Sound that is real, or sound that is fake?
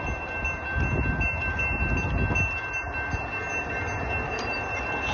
real